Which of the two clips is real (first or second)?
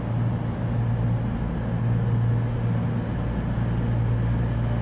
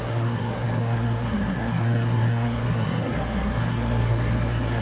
first